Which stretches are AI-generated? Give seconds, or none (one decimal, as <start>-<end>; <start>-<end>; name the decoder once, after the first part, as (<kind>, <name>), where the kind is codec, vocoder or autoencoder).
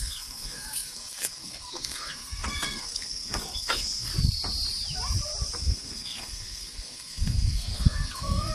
0.0-4.1 (codec, SNAC); 5.6-8.5